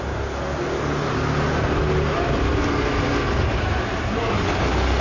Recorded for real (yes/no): yes